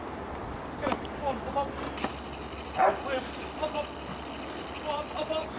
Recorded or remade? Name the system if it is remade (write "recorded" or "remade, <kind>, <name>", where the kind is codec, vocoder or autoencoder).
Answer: recorded